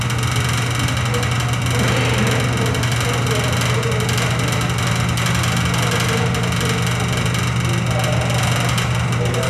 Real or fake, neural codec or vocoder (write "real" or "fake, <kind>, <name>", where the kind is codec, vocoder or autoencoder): real